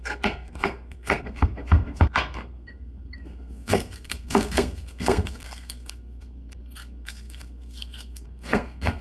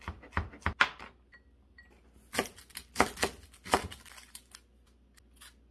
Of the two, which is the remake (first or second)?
first